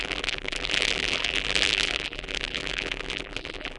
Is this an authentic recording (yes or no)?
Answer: no